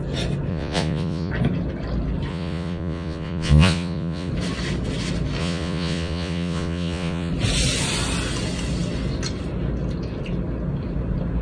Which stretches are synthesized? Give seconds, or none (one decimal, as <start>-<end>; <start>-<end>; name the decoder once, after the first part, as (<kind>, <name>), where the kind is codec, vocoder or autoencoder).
0.5-1.3 (vocoder, Vocos); 2.3-4.3; 5.4-7.3